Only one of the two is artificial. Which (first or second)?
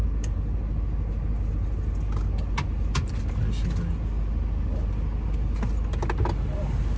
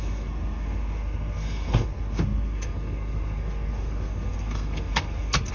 second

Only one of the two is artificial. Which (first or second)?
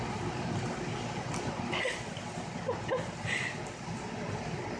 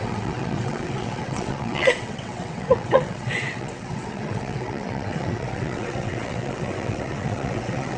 second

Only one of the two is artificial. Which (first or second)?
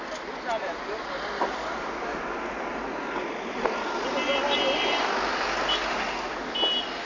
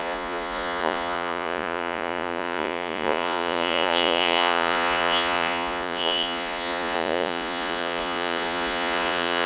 second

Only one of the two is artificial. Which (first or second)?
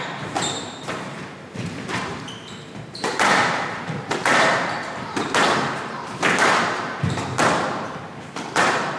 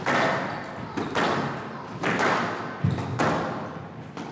first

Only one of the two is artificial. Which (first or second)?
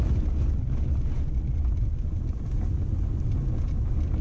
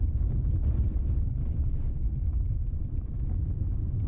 second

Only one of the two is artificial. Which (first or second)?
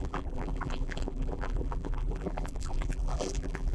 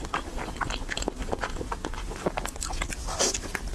first